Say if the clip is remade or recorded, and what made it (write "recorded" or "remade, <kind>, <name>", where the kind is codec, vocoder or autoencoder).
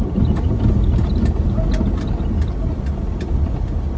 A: recorded